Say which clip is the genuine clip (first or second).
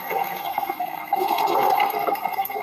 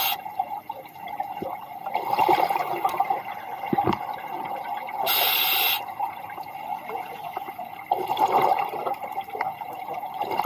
second